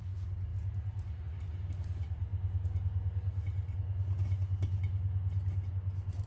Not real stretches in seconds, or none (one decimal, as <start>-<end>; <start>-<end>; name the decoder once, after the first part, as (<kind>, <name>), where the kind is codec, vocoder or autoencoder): none